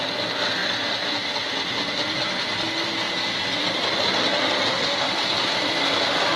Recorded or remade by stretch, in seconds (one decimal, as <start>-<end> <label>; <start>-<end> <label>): 0.0-6.4 recorded